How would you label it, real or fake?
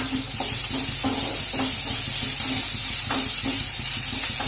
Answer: real